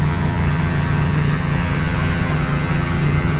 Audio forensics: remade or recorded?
remade